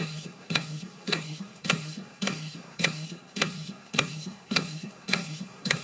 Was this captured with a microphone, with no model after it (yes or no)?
no